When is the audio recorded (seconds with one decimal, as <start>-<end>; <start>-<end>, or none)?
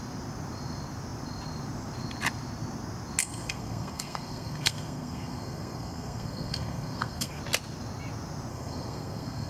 0.0-3.2; 7.4-8.5